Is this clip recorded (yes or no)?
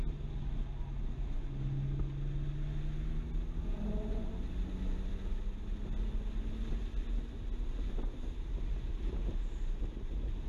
yes